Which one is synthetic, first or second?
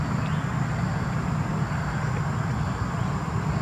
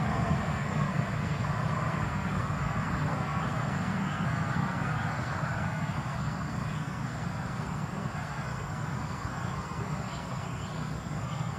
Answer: second